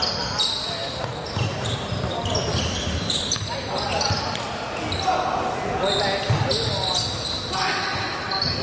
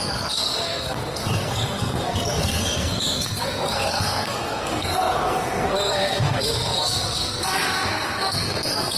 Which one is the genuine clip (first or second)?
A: first